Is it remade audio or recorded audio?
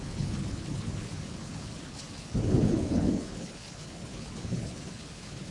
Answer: remade